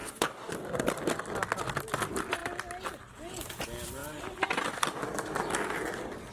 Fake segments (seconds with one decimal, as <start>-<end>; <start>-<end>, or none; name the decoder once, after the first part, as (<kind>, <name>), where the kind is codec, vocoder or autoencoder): 0.0-0.5 (codec, DAC)

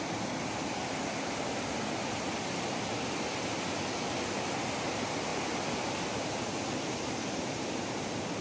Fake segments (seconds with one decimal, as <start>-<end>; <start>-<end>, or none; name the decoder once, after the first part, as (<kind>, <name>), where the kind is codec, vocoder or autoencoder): none

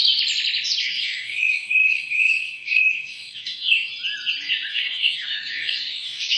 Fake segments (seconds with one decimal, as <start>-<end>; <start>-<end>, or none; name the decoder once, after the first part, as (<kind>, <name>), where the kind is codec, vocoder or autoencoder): 0.8-3.9 (codec, DAC); 4.7-6.4

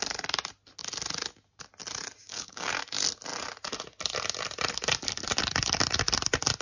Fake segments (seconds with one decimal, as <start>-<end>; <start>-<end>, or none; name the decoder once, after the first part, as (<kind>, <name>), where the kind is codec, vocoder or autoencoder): 2.2-2.7 (codec, DAC)

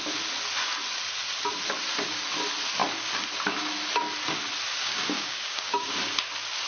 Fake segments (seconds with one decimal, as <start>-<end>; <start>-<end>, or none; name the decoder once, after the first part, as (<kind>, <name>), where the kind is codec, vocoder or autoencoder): 4.8-5.9 (codec, DAC)

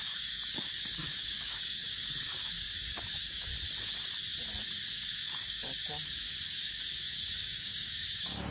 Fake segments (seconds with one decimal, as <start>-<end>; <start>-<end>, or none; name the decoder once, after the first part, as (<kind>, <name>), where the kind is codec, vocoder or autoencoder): 0.0-3.5 (codec, DAC); 4.9-8.5